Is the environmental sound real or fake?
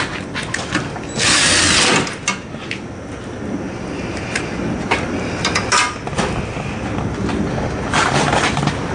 real